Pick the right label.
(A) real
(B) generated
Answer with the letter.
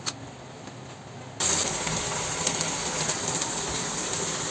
A